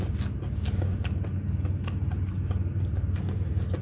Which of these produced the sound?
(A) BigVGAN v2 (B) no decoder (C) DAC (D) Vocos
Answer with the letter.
B